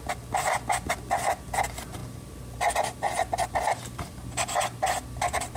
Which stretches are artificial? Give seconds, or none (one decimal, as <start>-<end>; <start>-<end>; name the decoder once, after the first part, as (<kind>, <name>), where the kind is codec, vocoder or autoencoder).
none